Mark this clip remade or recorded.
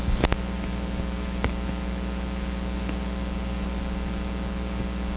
recorded